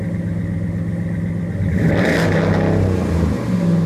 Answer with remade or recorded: recorded